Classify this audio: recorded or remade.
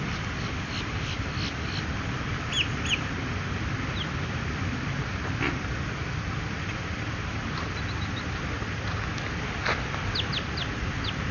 recorded